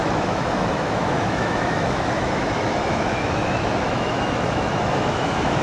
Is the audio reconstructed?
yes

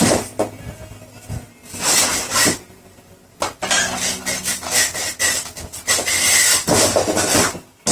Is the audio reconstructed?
no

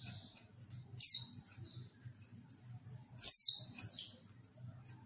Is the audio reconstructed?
no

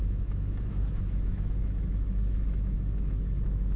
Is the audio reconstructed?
yes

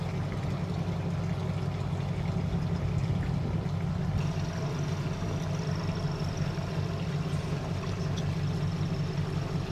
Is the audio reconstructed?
no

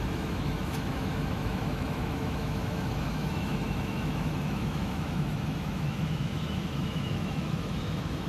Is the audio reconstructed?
yes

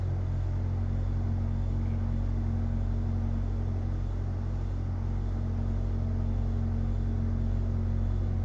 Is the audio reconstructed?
no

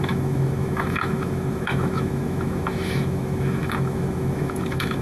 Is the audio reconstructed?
yes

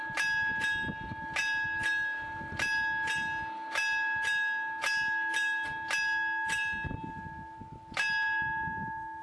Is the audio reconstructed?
no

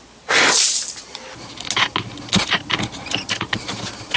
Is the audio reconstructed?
no